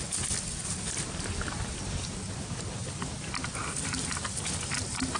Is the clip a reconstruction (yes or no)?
no